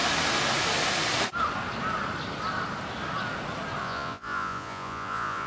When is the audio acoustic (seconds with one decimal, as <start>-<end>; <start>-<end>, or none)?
0.0-3.8